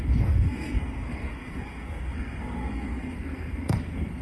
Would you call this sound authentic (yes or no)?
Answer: no